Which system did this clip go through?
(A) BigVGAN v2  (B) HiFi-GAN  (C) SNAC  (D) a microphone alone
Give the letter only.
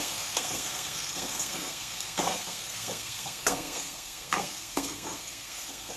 C